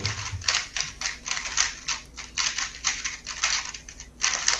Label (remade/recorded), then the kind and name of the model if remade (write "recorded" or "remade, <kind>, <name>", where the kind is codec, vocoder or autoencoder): recorded